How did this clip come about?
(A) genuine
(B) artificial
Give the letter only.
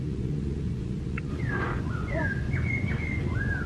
B